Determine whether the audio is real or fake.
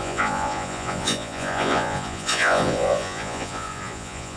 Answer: fake